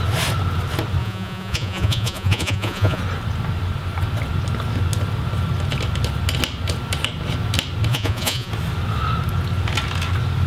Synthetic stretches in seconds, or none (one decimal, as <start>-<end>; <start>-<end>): 1.0-3.0; 7.9-8.5